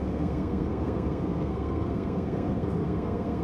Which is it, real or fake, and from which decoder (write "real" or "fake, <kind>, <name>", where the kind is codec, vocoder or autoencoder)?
fake, codec, SNAC